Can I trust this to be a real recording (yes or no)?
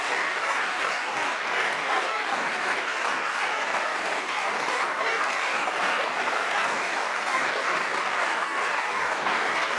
no